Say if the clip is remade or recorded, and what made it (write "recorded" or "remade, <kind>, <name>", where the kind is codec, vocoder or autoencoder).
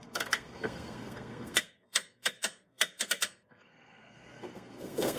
remade, codec, SNAC